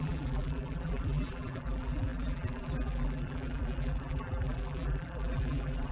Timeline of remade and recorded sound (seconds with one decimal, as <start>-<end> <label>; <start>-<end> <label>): 0.0-5.9 remade